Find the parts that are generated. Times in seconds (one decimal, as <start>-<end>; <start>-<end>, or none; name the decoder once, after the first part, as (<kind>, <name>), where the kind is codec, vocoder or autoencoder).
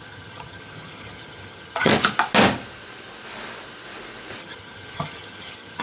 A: 0.0-1.9 (vocoder, HiFi-GAN); 4.4-5.8